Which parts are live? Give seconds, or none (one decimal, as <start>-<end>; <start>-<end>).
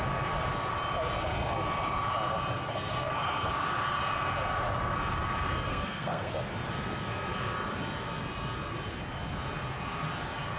0.0-2.7; 3.5-5.7; 6.3-10.6